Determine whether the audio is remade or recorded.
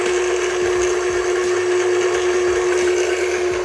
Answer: recorded